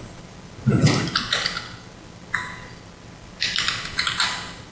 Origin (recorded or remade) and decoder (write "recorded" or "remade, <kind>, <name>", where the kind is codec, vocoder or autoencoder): recorded